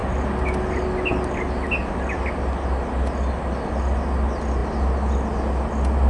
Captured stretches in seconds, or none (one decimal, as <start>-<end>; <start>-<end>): 0.0-6.1